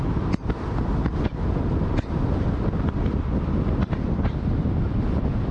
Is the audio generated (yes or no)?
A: no